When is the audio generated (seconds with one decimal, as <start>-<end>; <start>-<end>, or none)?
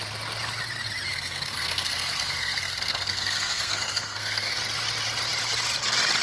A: 1.1-4.6